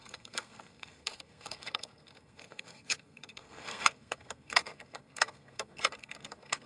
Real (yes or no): no